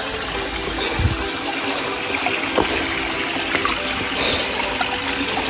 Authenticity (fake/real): real